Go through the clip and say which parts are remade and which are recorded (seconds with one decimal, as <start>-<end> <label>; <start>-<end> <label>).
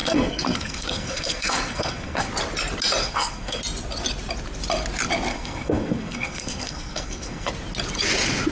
0.0-2.3 remade; 2.3-3.0 recorded; 3.0-3.6 remade; 3.6-5.3 recorded; 5.3-7.5 remade; 7.5-8.5 recorded